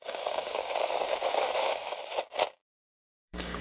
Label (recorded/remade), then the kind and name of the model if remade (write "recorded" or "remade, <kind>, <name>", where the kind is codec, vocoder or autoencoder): remade, codec, DAC